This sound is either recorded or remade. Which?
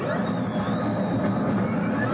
recorded